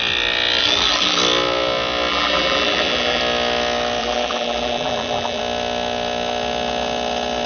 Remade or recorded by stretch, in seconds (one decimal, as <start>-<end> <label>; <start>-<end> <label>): 0.0-0.6 recorded; 0.6-1.2 remade; 1.2-2.1 recorded; 2.1-3.2 remade; 3.2-4.0 recorded; 4.0-5.4 remade; 5.4-7.5 recorded